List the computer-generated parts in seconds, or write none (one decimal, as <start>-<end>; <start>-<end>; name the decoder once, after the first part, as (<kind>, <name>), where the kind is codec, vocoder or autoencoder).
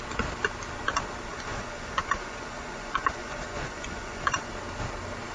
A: 1.3-4.5 (vocoder, Vocos)